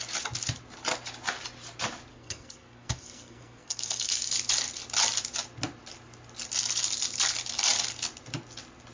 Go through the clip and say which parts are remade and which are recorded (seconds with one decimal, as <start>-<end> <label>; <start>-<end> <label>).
0.0-2.1 recorded; 2.1-4.3 remade; 4.3-8.9 recorded